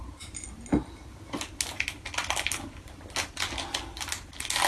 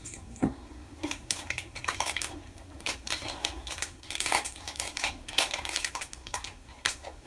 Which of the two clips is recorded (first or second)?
first